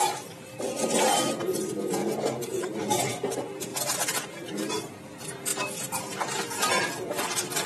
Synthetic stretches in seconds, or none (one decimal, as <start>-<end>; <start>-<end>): 2.0-2.6